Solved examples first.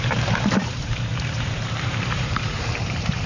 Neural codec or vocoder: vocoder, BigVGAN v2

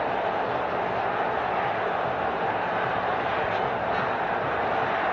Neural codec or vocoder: none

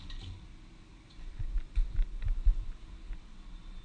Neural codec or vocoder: none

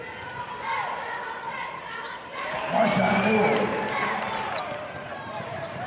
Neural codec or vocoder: vocoder, BigVGAN v2